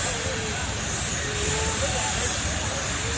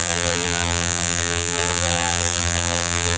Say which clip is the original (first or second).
first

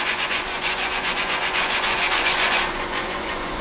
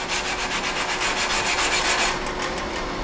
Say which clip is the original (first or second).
second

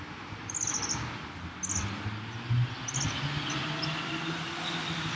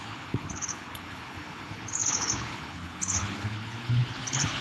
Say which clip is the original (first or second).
first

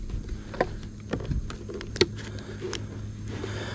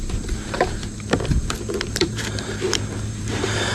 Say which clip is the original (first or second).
first